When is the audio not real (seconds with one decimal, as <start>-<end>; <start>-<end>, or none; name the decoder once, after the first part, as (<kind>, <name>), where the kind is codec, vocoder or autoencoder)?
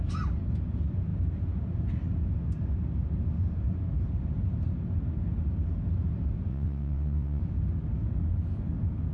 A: 6.5-7.4 (vocoder, WaveNeXt)